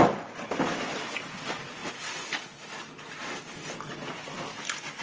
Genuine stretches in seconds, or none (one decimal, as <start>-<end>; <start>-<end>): 1.8-5.0